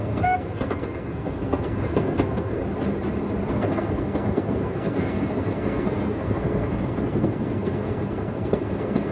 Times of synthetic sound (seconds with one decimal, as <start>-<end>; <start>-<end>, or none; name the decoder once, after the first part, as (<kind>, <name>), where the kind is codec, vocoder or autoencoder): 0.0-2.6 (codec, SNAC); 3.5-9.1